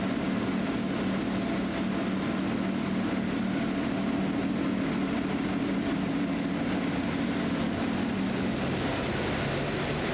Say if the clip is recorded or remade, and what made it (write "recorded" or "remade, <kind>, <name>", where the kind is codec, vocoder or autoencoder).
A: recorded